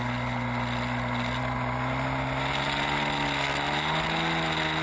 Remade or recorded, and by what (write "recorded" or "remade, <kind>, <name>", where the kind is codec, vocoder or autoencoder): recorded